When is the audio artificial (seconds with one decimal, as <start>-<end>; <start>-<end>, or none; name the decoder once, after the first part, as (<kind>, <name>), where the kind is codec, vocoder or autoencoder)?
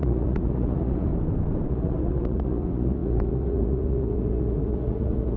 0.0-1.1 (vocoder, Vocos); 1.7-5.4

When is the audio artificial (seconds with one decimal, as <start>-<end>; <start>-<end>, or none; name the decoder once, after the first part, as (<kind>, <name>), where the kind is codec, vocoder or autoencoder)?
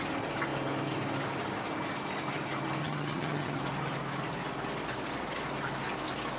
2.8-3.6 (vocoder, HiFi-GAN)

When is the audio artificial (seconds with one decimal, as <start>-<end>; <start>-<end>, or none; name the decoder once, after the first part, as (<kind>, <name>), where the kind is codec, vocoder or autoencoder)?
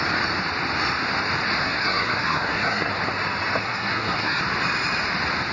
1.6-2.9 (codec, SNAC); 3.6-4.4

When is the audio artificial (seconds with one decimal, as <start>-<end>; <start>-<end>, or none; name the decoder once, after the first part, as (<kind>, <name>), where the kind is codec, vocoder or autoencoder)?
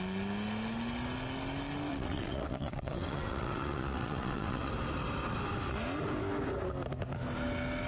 1.9-4.7 (vocoder, WaveNeXt)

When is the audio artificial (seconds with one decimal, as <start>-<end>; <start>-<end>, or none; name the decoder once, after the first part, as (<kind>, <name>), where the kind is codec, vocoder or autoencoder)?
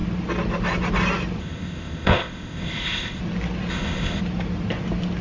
1.4-3.2 (codec, ZipCodec); 3.7-4.2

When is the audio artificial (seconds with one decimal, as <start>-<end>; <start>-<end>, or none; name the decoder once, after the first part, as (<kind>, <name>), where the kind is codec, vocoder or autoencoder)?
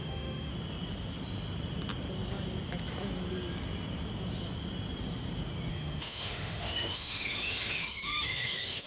0.0-0.5 (autoencoder, DAC-VAE); 5.7-8.9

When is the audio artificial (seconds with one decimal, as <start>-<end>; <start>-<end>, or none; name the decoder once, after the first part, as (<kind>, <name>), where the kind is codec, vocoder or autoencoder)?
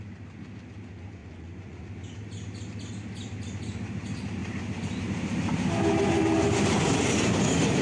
1.2-1.8 (vocoder, Vocos)